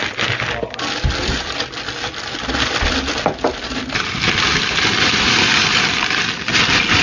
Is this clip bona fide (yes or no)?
yes